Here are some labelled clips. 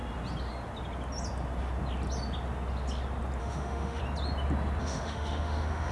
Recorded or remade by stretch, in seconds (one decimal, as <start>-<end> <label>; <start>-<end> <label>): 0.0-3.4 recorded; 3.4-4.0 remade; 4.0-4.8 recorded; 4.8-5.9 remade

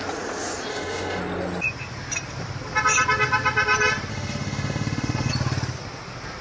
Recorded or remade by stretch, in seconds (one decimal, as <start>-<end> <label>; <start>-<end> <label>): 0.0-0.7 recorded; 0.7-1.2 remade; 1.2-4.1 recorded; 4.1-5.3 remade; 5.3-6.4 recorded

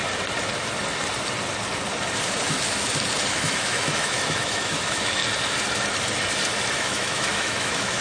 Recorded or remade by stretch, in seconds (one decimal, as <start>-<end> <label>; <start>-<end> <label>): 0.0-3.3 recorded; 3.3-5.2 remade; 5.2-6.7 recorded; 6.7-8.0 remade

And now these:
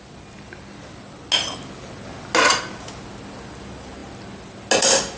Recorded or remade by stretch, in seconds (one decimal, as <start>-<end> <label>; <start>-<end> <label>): 0.0-5.2 recorded

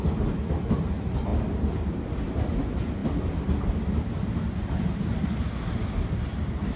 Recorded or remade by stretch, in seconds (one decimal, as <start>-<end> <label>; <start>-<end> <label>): 0.0-6.8 recorded